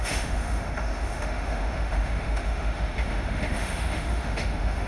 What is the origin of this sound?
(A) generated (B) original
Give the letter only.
A